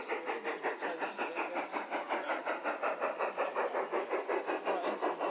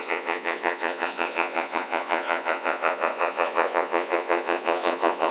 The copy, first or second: second